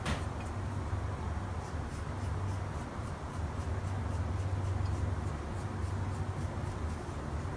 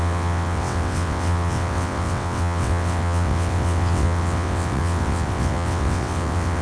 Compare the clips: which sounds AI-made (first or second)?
second